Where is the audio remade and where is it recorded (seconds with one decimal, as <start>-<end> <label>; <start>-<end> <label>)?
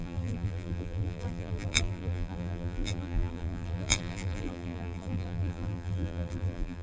0.0-6.8 remade